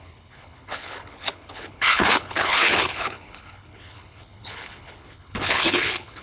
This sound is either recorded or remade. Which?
remade